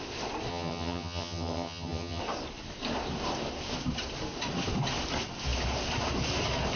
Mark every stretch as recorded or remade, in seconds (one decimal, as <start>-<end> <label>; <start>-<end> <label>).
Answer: 0.0-0.5 recorded; 0.5-2.2 remade; 2.2-6.8 recorded